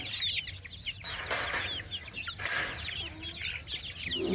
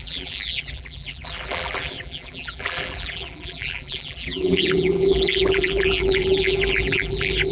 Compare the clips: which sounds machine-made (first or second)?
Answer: second